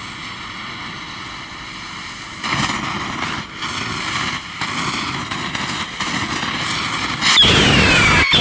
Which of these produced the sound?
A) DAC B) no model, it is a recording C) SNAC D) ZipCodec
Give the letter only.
B